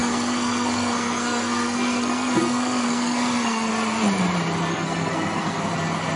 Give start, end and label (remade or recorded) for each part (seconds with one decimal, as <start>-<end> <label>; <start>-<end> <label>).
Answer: 0.0-3.7 remade; 3.7-4.7 recorded; 4.7-5.6 remade; 5.6-6.2 recorded